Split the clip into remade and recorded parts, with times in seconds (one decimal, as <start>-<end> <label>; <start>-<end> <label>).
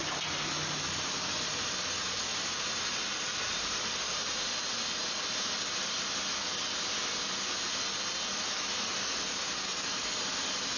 0.0-2.3 recorded; 2.3-4.3 remade; 4.3-10.8 recorded